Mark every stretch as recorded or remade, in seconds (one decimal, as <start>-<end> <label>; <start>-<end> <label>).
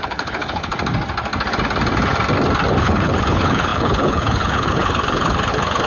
0.0-0.7 remade; 0.7-2.8 recorded; 2.8-5.9 remade